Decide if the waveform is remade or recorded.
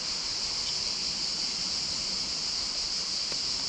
recorded